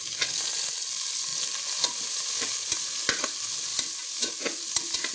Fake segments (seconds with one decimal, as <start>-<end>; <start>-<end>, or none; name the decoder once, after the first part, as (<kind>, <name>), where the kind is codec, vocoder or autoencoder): none